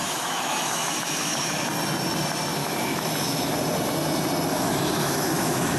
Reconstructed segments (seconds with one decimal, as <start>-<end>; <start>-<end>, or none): 0.0-1.7; 2.6-3.5; 4.5-5.8